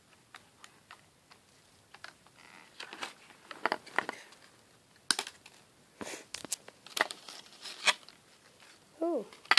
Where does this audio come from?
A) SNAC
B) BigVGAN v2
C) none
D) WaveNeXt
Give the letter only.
C